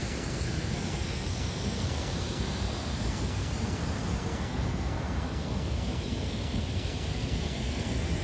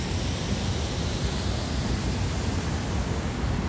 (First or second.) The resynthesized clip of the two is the first